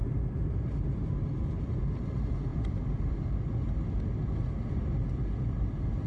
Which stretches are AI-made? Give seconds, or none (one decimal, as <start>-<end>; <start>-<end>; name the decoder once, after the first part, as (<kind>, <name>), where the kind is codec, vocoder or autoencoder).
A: 0.0-0.8 (vocoder, BigVGAN v2); 2.5-3.1